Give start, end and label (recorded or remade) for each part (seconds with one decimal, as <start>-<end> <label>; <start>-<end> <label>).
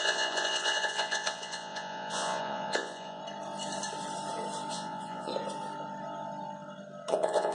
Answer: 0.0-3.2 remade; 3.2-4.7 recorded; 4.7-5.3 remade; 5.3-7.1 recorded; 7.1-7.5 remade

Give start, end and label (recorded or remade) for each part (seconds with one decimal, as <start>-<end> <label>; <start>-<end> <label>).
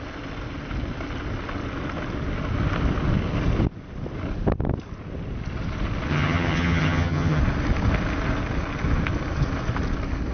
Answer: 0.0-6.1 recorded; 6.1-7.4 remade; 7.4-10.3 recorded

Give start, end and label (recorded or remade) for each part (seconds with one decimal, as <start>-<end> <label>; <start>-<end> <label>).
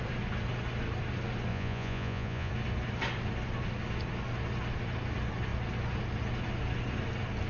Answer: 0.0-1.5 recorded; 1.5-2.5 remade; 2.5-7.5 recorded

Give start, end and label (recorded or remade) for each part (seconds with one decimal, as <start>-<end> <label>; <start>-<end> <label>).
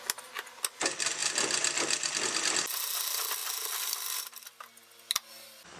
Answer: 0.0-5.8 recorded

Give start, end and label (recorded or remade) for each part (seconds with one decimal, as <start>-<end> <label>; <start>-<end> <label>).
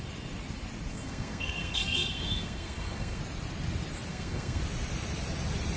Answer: 0.0-0.9 recorded; 0.9-3.2 remade; 3.2-4.1 recorded; 4.1-4.6 remade; 4.6-5.8 recorded